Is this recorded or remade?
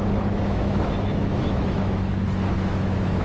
remade